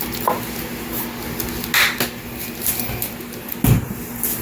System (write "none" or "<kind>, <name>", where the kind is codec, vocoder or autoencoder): none